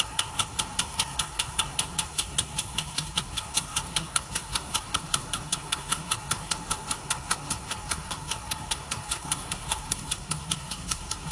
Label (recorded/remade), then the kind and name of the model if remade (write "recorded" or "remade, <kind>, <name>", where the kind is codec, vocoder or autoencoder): remade, codec, SNAC